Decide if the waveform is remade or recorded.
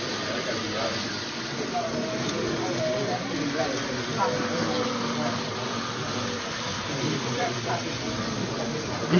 recorded